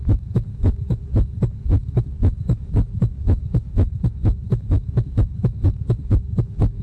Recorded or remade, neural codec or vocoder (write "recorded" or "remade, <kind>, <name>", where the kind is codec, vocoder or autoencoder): remade, codec, DAC